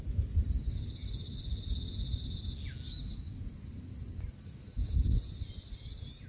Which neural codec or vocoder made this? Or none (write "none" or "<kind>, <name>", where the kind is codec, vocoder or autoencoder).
none